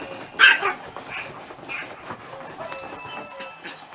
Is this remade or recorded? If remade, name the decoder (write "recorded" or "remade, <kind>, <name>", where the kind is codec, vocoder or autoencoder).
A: recorded